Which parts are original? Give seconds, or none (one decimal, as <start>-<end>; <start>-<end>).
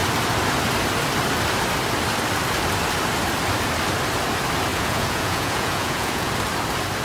0.0-4.7; 6.3-7.0